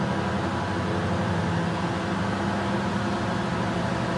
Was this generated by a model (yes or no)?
no